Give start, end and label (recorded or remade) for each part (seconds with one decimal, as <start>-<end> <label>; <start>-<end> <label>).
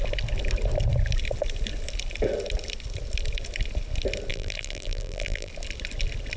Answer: 0.0-4.3 recorded; 4.3-5.5 remade; 5.5-6.4 recorded